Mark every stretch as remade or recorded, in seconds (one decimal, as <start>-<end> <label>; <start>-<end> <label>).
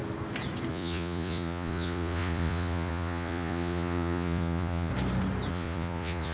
0.0-0.7 recorded; 0.7-4.9 remade; 4.9-5.5 recorded; 5.5-6.3 remade